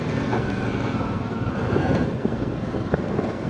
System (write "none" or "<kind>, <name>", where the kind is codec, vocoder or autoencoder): codec, SNAC